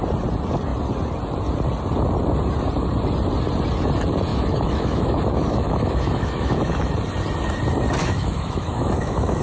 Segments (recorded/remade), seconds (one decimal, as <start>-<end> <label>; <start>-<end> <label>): 0.0-4.3 recorded; 4.3-6.9 remade; 6.9-8.0 recorded; 8.0-9.4 remade